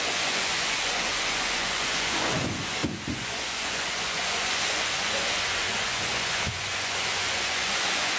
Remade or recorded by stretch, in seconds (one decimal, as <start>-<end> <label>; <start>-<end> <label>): 0.0-8.2 remade